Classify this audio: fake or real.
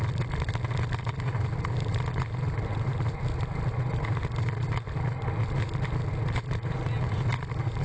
real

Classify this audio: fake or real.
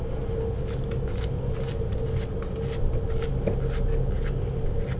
real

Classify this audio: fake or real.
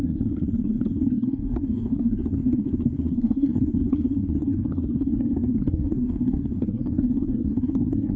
fake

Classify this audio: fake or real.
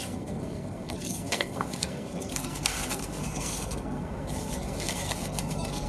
fake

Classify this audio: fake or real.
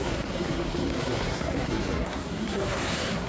fake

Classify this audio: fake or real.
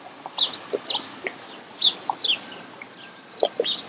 real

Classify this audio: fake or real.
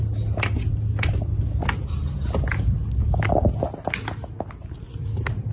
real